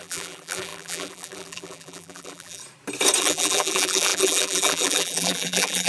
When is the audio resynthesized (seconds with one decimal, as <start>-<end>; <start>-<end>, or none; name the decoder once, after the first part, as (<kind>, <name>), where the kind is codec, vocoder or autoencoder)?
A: 0.0-2.6 (vocoder, BigVGAN v2); 3.2-5.9